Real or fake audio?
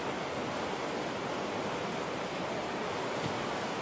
real